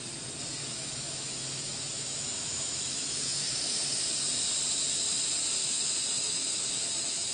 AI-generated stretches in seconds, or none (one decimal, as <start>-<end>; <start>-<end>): 0.6-4.0; 5.6-7.3